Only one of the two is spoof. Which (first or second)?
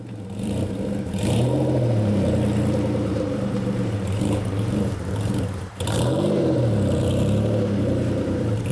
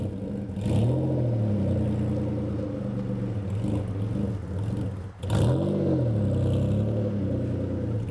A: first